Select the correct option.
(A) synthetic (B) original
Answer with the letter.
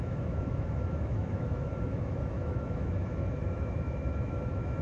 A